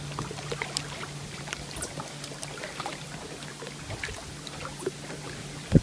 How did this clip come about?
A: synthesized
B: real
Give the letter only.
B